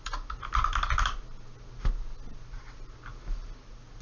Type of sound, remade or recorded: recorded